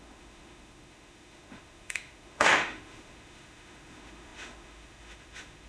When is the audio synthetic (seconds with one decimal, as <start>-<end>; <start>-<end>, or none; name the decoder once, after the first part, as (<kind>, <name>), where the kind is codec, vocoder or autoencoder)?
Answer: 0.0-5.7 (autoencoder, DAC-VAE)